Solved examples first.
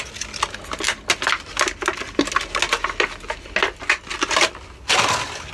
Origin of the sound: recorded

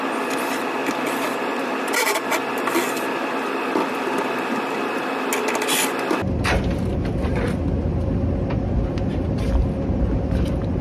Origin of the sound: recorded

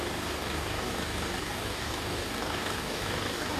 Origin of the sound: remade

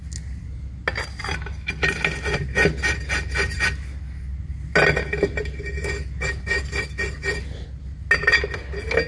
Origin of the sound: recorded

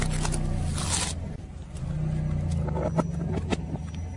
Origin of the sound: recorded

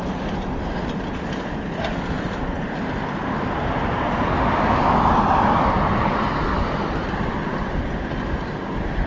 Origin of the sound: recorded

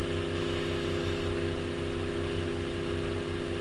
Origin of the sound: recorded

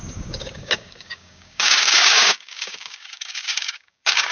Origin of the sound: remade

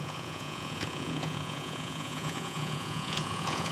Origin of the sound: remade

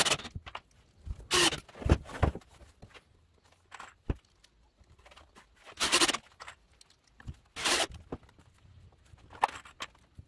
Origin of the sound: recorded